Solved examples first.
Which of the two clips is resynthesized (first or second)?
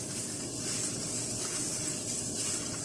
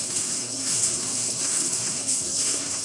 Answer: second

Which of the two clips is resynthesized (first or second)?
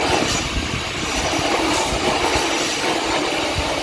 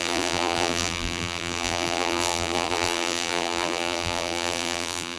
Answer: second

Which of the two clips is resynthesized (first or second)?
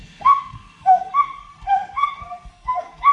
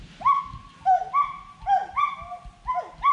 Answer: first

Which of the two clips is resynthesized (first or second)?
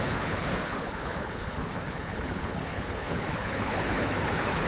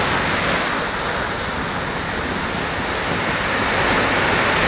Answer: first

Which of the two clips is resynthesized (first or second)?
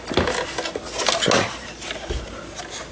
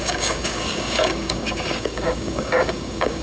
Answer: second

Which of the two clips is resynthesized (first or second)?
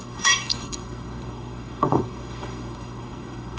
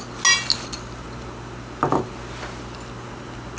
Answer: first